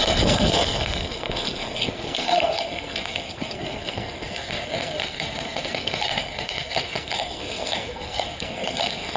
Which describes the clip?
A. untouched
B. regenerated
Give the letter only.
B